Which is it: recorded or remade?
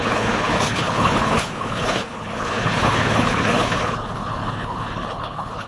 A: remade